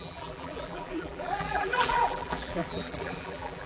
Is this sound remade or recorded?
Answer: remade